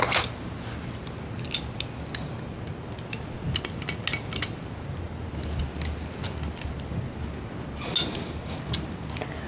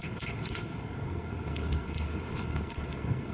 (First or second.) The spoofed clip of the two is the second